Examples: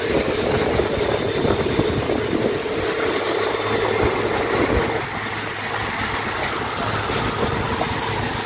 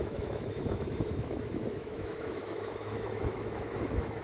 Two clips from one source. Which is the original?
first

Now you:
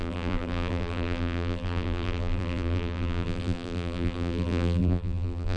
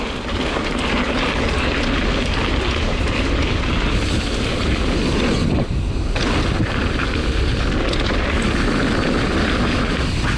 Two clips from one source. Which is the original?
second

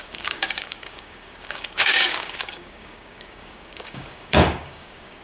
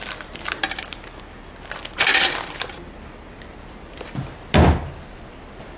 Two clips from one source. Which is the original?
second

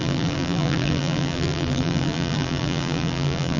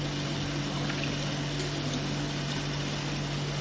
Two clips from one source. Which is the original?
second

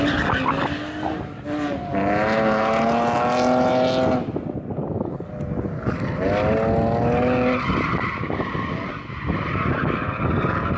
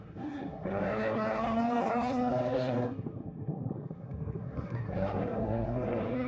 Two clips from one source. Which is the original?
first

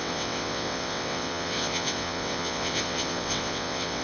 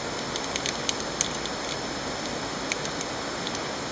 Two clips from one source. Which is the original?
second